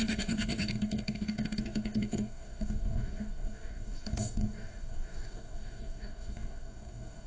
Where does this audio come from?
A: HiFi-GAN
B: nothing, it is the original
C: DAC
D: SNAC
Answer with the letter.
C